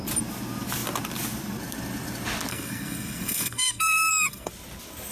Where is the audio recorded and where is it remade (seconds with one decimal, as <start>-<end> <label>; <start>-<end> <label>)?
0.0-2.5 recorded; 2.5-4.5 remade; 4.5-5.1 recorded